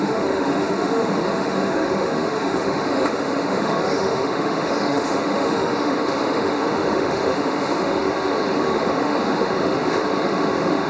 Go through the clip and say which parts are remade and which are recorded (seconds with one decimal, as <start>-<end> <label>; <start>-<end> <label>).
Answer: 0.0-10.9 remade